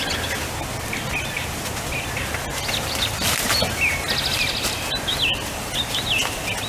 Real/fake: real